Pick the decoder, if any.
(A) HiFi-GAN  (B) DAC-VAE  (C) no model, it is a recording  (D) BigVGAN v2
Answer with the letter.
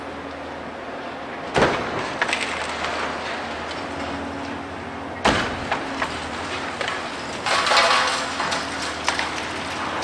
C